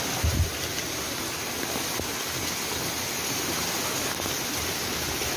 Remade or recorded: recorded